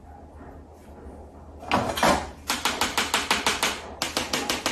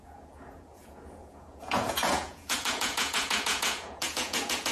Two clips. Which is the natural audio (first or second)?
first